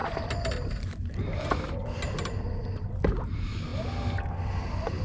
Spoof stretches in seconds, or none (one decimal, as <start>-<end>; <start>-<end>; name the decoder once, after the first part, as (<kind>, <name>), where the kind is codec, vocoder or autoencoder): none

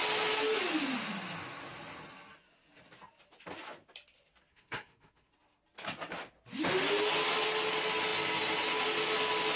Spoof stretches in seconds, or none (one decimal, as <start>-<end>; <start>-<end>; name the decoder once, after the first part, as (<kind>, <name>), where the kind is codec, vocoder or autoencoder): 4.5-5.3 (codec, SNAC)

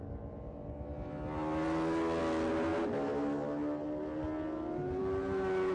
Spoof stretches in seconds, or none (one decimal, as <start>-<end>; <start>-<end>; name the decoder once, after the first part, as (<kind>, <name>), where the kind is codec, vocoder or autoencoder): none

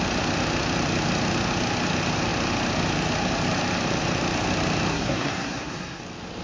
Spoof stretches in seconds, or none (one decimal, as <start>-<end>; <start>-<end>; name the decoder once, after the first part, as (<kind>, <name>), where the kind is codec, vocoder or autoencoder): 4.9-6.0 (codec, SNAC)

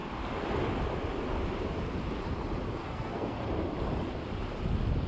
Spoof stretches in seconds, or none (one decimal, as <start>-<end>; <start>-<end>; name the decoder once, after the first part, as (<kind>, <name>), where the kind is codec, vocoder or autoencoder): 2.8-3.4 (codec, SNAC)

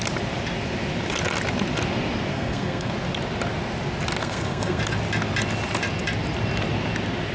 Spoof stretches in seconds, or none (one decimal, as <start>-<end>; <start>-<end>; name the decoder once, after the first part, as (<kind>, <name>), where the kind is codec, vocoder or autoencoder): 2.3-2.9 (codec, SNAC); 4.2-4.8

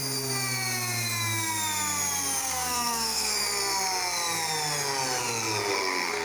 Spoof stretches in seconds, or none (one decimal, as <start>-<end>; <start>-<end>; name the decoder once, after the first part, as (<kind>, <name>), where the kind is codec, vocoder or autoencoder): 2.4-3.3 (codec, SNAC); 5.7-6.2